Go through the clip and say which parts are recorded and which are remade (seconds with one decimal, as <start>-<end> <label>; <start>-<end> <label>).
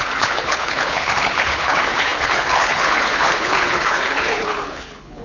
0.0-5.2 remade